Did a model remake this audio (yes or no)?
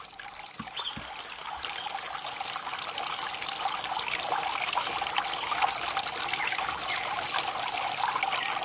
no